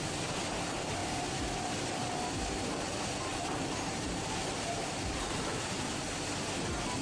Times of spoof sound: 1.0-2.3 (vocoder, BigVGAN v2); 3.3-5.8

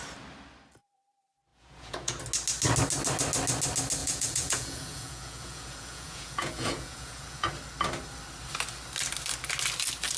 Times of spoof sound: 1.5-2.2 (vocoder, Vocos); 4.0-7.5

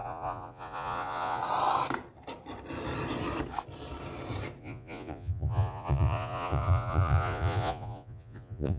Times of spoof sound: 0.0-1.4 (vocoder, Vocos); 4.6-8.8

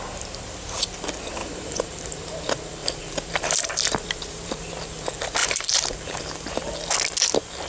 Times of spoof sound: 1.4-2.3 (vocoder, BigVGAN v2); 2.8-4.7; 5.4-6.2

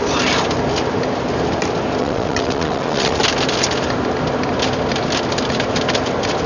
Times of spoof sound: 2.0-3.2 (vocoder, WaveNeXt)

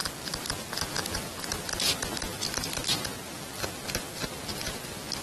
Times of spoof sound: none